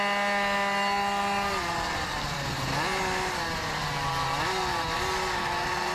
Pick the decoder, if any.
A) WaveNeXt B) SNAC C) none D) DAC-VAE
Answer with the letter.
C